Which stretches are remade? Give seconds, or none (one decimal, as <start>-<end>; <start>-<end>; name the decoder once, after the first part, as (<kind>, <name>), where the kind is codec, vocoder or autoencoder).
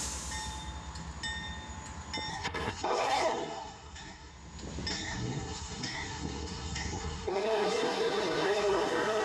2.3-4.3 (codec, SNAC); 4.9-9.2